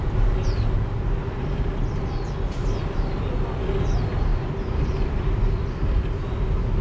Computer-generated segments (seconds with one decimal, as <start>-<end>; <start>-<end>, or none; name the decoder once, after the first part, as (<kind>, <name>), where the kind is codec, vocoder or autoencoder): none